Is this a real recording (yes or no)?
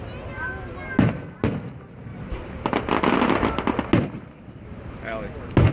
yes